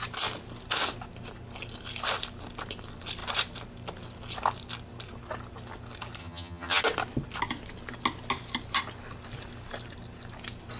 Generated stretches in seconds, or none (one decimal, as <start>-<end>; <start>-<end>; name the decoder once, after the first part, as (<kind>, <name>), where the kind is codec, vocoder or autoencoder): 6.2-6.8 (vocoder, HiFi-GAN)